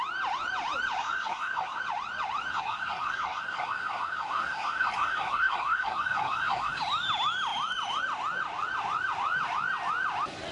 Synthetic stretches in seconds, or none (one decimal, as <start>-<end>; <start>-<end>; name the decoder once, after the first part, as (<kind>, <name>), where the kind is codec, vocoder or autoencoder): 1.0-1.8 (codec, SNAC); 2.5-6.8